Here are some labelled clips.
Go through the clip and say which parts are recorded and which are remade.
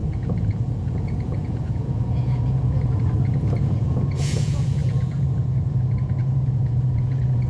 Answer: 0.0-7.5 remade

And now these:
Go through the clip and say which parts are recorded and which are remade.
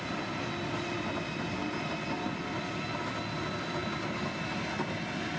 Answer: 0.0-5.4 recorded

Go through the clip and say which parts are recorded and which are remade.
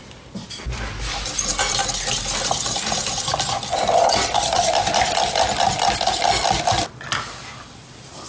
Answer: 0.0-8.3 recorded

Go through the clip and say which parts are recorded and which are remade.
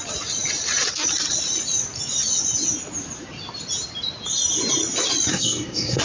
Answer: 0.0-5.3 recorded; 5.3-6.0 remade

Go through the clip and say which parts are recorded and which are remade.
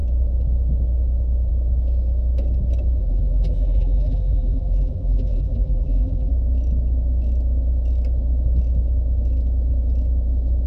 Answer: 0.0-3.0 recorded; 3.0-6.3 remade; 6.3-10.7 recorded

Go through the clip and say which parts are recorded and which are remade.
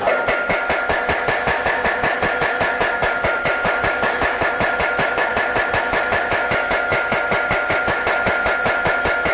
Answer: 0.0-3.0 recorded; 3.0-5.7 remade; 5.7-9.3 recorded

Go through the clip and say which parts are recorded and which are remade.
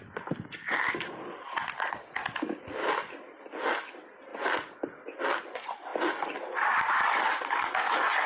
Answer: 0.0-8.3 recorded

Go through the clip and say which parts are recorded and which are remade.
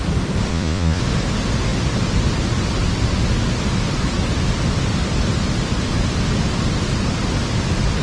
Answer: 0.0-0.5 recorded; 0.5-1.0 remade; 1.0-8.0 recorded